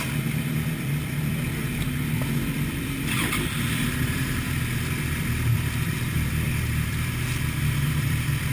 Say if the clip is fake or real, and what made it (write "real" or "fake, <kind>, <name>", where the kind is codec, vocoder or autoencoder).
fake, vocoder, BigVGAN v2